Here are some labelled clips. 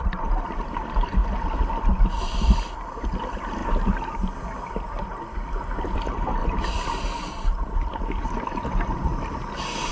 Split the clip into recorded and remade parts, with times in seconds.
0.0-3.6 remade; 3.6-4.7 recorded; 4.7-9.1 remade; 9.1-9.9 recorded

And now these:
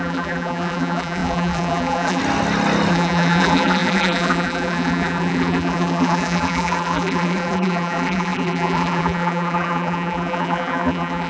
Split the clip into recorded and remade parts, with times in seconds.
0.0-2.2 remade; 2.2-2.9 recorded; 2.9-11.3 remade

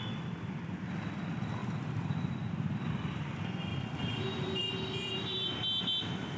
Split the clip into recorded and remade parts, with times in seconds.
0.0-1.6 recorded; 1.6-2.3 remade; 2.3-3.7 recorded; 3.7-4.6 remade; 4.6-6.4 recorded

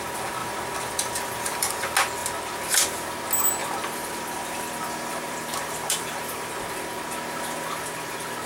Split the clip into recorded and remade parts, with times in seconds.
0.0-0.4 recorded; 0.4-1.7 remade; 1.7-3.6 recorded; 3.6-6.5 remade; 6.5-8.5 recorded

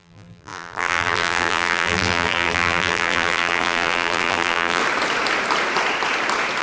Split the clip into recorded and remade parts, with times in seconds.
0.0-4.8 remade; 4.8-6.6 recorded